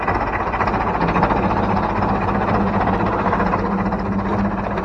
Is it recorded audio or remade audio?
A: recorded